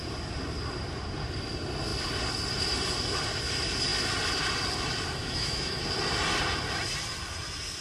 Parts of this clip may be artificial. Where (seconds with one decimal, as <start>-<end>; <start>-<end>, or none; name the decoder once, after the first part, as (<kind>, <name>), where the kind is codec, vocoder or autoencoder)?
5.2-5.8 (autoencoder, DAC-VAE)